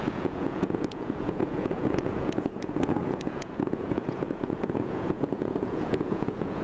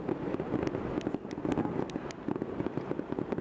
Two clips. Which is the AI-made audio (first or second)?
first